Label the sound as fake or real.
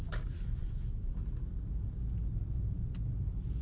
real